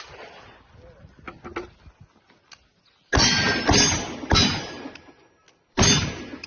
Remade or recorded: recorded